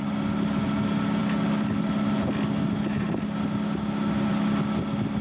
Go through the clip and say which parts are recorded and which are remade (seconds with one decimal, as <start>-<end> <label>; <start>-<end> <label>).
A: 0.0-5.2 recorded